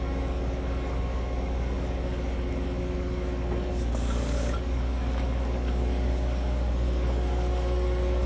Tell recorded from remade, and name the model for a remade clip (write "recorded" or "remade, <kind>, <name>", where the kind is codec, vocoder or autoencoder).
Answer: remade, codec, DAC